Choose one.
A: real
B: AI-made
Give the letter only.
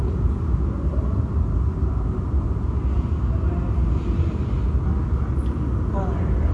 A